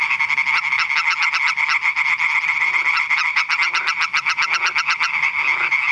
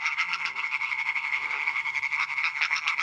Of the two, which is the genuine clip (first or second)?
first